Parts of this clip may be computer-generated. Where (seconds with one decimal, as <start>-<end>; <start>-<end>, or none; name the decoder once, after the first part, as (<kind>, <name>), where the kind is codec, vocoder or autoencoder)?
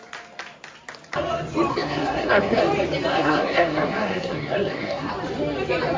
1.7-2.6 (codec, SNAC); 3.1-5.1